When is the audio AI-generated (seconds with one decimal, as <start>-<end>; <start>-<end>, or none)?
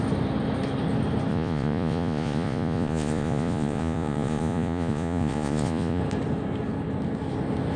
1.3-6.0